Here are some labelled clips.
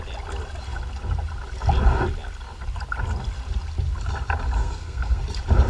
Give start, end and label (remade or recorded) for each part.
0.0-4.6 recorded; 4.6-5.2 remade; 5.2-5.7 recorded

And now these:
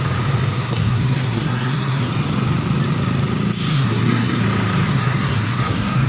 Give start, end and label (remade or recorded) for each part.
0.0-0.6 recorded; 0.6-2.1 remade; 2.1-3.7 recorded; 3.7-4.4 remade; 4.4-4.9 recorded; 4.9-6.1 remade

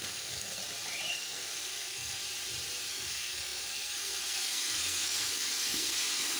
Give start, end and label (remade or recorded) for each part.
0.0-0.6 remade; 0.6-1.1 recorded; 1.1-2.2 remade; 2.2-2.9 recorded; 2.9-6.4 remade

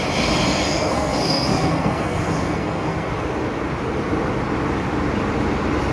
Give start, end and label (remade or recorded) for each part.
0.0-0.7 recorded; 0.7-3.1 remade; 3.1-5.9 recorded

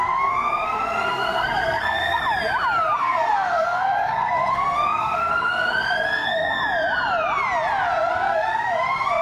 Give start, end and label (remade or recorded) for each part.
0.0-2.2 remade; 2.2-3.0 recorded; 3.0-6.6 remade; 6.6-8.1 recorded; 8.1-9.2 remade

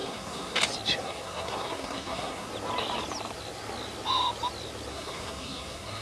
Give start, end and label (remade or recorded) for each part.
0.0-0.6 remade; 0.6-1.0 recorded; 1.0-2.5 remade; 2.5-4.9 recorded; 4.9-6.0 remade

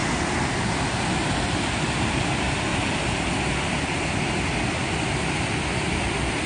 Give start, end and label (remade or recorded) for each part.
0.0-6.5 recorded

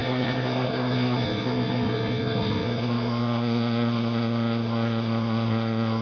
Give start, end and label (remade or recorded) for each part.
0.0-6.0 remade